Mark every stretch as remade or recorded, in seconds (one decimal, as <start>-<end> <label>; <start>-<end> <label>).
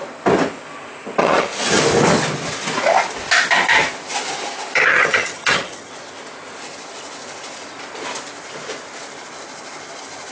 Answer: 0.0-1.2 recorded; 1.2-1.8 remade; 1.8-4.9 recorded; 4.9-5.9 remade; 5.9-10.3 recorded